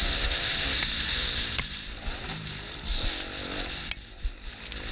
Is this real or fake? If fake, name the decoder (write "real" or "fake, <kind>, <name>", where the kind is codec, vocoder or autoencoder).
real